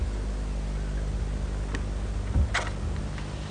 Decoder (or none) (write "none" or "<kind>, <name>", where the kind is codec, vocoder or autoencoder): none